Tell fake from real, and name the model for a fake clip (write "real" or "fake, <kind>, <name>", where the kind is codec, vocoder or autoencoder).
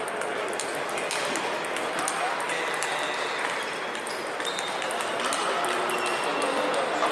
real